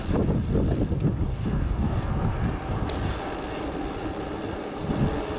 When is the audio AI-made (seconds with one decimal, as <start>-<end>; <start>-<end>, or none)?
1.3-2.1